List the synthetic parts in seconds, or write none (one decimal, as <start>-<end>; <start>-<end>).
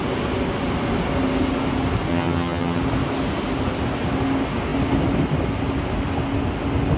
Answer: 2.1-2.8